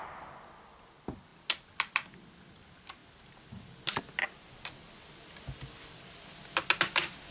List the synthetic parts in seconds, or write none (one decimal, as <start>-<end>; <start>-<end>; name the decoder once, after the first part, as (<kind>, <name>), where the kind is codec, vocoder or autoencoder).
none